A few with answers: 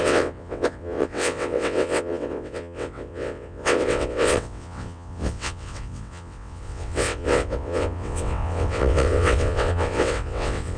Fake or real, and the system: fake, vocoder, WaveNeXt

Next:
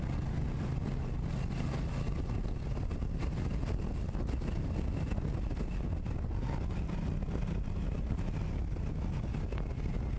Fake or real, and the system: real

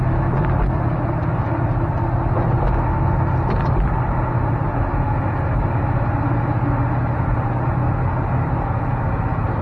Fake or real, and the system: real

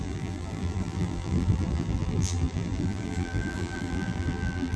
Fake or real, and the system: fake, vocoder, BigVGAN v2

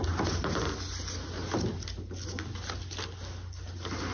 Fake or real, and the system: real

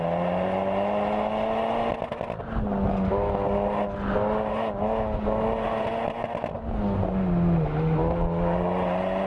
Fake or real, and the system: real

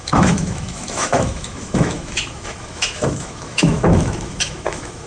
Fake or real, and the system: fake, autoencoder, DAC-VAE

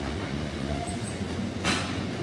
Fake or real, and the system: fake, vocoder, Vocos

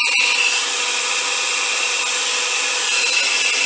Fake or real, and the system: real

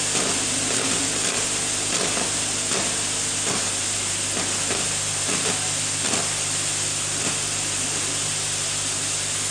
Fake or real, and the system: real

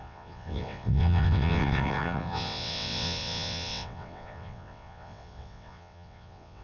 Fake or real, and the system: fake, vocoder, WaveNeXt